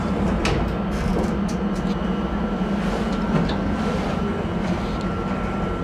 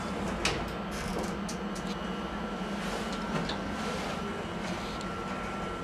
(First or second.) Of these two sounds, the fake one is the first